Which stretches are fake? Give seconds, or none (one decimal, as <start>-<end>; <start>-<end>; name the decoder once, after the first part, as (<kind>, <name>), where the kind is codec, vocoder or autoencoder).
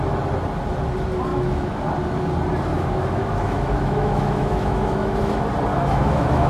1.3-1.8 (autoencoder, DAC-VAE); 2.7-5.3; 5.7-6.5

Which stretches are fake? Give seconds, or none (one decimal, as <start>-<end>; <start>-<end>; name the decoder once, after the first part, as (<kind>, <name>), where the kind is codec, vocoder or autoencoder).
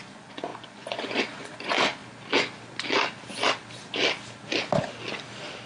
0.0-2.0 (vocoder, Vocos)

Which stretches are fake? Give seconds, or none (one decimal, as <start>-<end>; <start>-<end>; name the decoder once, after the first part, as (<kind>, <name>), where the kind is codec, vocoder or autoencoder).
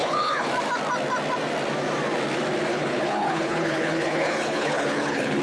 0.0-0.5 (codec, HILCodec); 2.7-5.4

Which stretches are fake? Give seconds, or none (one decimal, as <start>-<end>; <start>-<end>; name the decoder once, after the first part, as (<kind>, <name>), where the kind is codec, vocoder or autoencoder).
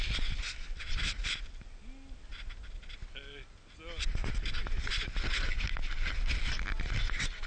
none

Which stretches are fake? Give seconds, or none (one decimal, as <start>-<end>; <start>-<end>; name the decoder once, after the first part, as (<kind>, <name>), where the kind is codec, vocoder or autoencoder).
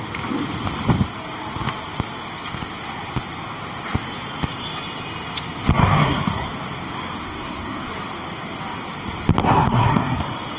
5.8-6.5 (codec, SNAC); 7.2-7.9; 9.4-10.2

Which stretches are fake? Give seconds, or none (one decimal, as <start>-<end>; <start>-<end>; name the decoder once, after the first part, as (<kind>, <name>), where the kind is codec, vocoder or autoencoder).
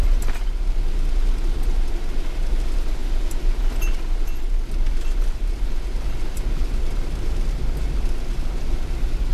none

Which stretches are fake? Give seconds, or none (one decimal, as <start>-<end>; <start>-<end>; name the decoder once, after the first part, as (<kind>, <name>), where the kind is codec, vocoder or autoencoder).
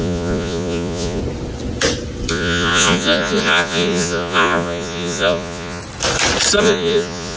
0.0-1.2 (vocoder, Vocos); 2.3-5.8; 6.6-7.4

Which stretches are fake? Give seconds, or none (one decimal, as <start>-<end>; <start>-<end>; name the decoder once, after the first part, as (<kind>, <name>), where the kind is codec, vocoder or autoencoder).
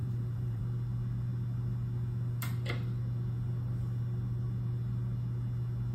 0.0-0.6 (vocoder, BigVGAN v2)